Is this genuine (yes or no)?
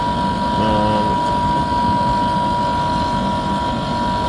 yes